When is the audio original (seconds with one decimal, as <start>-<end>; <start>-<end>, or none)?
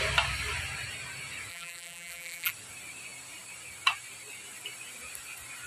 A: 0.0-1.5; 2.5-5.7